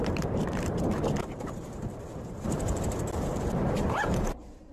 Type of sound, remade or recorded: remade